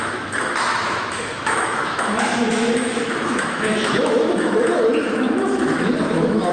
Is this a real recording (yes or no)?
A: no